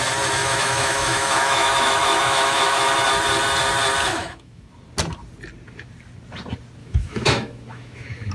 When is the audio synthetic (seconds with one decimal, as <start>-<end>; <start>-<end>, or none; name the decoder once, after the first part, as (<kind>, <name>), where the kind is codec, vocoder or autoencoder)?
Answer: 0.4-2.8 (autoencoder, DAC-VAE); 4.1-4.7; 6.8-8.3